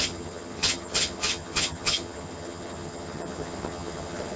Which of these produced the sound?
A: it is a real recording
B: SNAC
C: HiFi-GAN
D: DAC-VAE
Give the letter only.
C